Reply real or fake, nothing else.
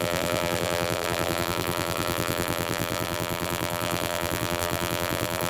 fake